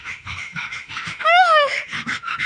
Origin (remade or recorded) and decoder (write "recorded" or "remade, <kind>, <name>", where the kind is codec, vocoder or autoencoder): remade, autoencoder, DAC-VAE